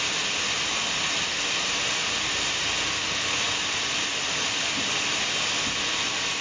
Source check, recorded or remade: recorded